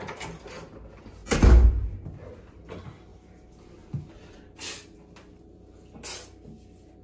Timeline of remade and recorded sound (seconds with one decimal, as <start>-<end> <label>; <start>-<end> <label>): 0.0-7.0 recorded